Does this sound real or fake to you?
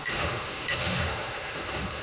fake